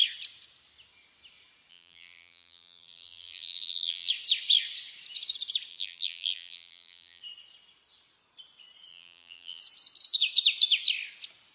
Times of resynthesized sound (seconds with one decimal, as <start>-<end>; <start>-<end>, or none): 1.7-4.1; 5.7-7.2; 8.9-9.6